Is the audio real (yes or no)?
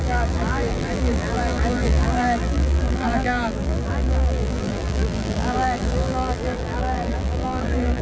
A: no